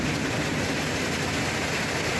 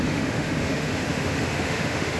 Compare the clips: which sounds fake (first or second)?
second